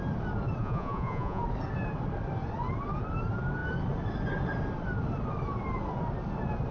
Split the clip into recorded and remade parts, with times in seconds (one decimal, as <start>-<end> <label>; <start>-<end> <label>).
0.0-0.6 recorded; 0.6-1.4 remade; 1.4-6.7 recorded